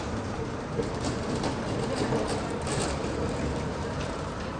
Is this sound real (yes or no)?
no